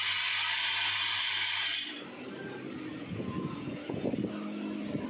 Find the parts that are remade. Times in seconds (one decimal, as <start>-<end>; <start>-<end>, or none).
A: 2.9-4.1